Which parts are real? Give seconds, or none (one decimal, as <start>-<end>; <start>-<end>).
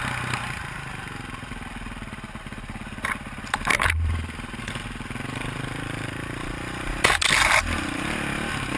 0.0-0.6; 1.5-3.7; 4.7-8.8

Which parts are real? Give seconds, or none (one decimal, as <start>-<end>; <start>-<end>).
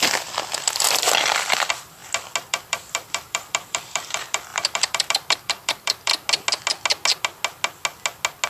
2.0-2.5; 6.1-8.5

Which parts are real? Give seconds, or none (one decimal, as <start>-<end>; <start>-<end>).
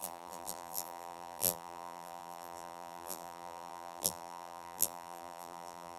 none